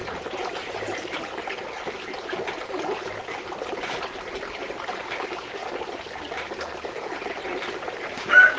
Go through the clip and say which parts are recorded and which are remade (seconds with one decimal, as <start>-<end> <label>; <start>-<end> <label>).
0.0-5.0 recorded; 5.0-5.6 remade; 5.6-8.0 recorded; 8.0-8.6 remade